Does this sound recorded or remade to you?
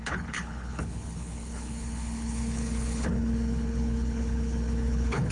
remade